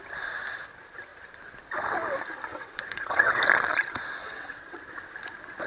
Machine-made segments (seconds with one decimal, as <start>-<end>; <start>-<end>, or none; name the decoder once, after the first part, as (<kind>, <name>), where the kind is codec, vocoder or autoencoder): 2.5-3.4 (vocoder, WaveNeXt); 4.2-4.8